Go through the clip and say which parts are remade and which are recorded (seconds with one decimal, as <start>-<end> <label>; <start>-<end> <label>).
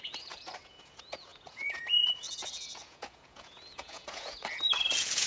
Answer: 0.0-5.3 remade